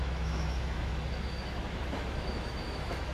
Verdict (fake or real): fake